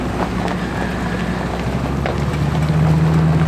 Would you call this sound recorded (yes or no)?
yes